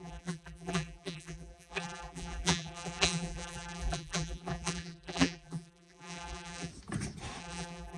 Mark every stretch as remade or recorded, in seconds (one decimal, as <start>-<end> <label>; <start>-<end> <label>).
0.0-6.7 remade; 6.7-7.4 recorded; 7.4-8.0 remade